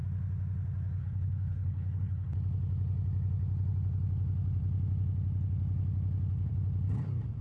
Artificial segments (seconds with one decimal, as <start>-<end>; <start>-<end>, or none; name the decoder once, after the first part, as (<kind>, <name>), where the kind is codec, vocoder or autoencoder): 1.0-2.3 (codec, HILCodec)